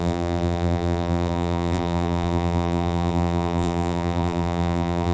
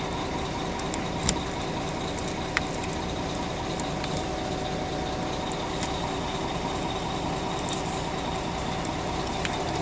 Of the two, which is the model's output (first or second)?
first